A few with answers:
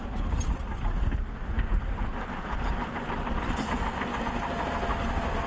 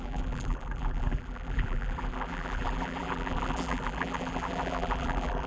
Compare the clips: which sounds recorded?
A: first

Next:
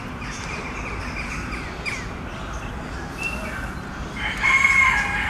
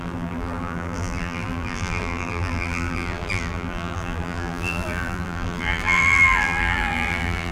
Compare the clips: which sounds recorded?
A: first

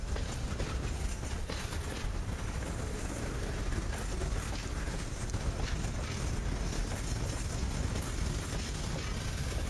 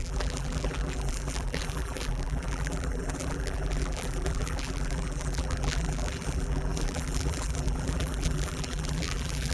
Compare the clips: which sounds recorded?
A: first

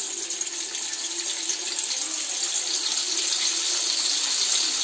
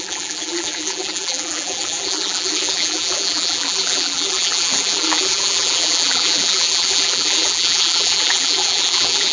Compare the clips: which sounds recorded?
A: first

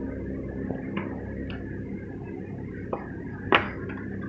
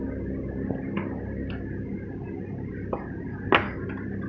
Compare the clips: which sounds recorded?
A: second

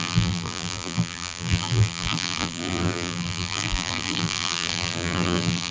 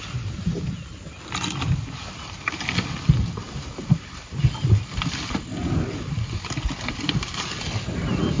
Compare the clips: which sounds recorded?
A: second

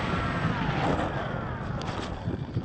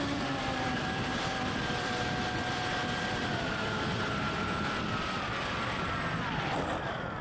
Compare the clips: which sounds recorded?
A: first